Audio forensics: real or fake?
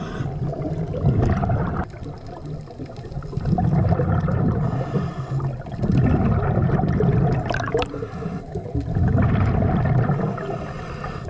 real